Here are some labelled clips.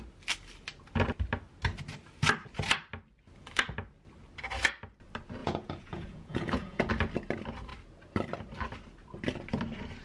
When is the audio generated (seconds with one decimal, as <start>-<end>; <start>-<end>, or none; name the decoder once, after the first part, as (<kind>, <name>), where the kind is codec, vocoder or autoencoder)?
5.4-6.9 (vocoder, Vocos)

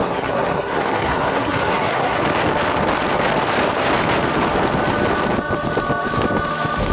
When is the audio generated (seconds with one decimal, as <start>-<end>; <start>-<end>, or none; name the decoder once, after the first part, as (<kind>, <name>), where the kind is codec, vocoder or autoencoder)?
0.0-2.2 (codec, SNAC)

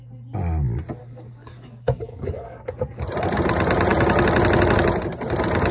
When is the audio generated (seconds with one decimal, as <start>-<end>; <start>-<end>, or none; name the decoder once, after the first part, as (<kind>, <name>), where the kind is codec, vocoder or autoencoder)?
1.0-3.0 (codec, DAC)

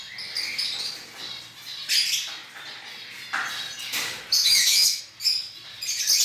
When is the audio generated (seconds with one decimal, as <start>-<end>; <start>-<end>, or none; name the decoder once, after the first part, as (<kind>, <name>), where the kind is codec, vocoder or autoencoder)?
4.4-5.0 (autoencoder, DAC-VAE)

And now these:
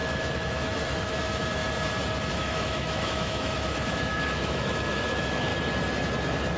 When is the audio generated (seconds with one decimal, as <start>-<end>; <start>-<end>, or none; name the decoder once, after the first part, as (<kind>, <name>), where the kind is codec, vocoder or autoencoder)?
0.0-1.6 (autoencoder, DAC-VAE); 2.3-5.5

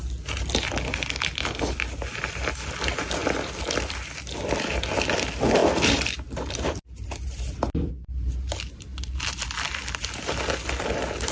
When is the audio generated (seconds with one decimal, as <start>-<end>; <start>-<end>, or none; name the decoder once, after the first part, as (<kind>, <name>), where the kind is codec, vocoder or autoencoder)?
3.2-4.8 (vocoder, BigVGAN v2); 5.6-7.9

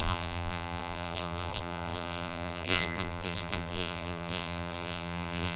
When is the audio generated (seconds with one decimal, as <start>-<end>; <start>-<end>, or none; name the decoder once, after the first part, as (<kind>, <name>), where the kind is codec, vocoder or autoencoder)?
0.0-5.6 (vocoder, BigVGAN v2)

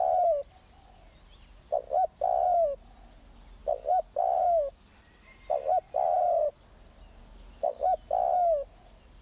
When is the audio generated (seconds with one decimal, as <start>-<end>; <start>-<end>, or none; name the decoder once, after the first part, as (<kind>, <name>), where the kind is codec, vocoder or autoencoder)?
3.6-5.0 (codec, DAC); 7.2-7.8